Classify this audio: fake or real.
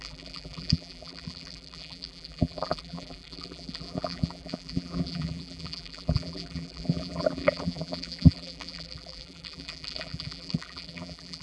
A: fake